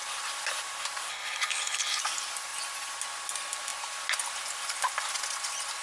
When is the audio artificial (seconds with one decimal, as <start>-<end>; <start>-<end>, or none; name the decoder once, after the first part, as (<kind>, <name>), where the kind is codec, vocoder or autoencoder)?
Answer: 1.1-2.0 (codec, HILCodec)

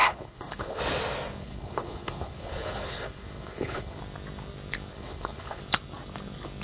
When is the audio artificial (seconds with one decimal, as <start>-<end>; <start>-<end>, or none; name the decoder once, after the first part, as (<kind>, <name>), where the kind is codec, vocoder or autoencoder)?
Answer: 0.0-0.8 (codec, HILCodec); 1.4-4.0; 4.9-5.6

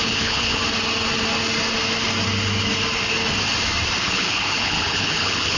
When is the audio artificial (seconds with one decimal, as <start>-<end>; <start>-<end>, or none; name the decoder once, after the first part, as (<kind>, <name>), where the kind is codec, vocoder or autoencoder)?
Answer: 0.0-0.6 (codec, HILCodec); 4.0-5.6

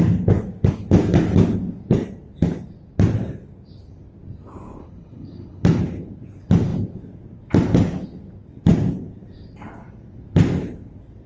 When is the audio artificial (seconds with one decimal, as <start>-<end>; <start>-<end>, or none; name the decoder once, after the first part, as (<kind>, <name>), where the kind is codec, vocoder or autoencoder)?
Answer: 4.8-5.8 (codec, HILCodec)

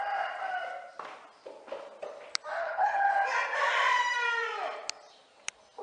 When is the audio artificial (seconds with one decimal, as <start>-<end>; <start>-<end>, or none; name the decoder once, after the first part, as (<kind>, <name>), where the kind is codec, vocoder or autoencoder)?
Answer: 2.6-3.1 (codec, HILCodec)

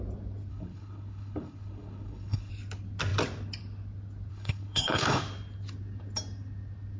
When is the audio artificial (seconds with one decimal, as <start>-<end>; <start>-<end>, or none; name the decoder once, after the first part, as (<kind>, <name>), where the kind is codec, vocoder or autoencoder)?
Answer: 0.5-2.5 (codec, HILCodec); 4.3-5.2

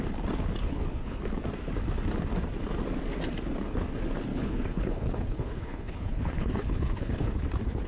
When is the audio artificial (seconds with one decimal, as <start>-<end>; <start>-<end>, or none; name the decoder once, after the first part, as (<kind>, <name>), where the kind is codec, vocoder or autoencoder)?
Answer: 0.6-1.2 (codec, HILCodec); 4.3-7.3